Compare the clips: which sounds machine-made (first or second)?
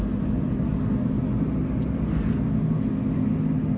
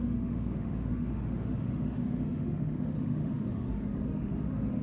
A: second